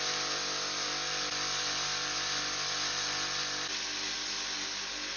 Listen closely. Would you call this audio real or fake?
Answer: real